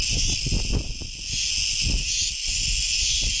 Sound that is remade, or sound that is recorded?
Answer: recorded